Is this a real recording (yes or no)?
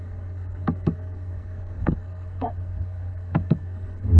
no